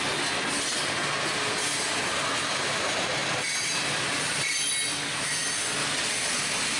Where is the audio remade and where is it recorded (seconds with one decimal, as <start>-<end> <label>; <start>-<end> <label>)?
0.0-3.2 recorded; 3.2-4.4 remade; 4.4-6.8 recorded